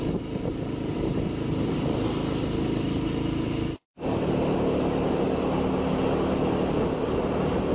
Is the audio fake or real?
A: real